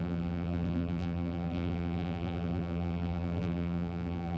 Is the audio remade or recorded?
remade